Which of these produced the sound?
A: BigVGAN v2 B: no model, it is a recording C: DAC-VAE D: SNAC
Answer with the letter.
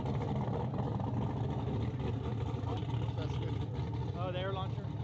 B